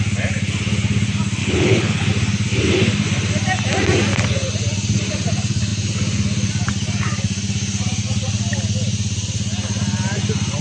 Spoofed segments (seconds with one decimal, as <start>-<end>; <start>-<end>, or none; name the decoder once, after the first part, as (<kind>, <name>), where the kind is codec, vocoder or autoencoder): 1.4-2.1 (codec, HILCodec)